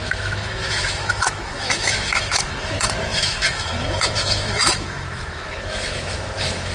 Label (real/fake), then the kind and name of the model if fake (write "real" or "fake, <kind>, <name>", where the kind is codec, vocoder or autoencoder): fake, autoencoder, DAC-VAE